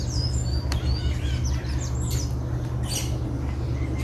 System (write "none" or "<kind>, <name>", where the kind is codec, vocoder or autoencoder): none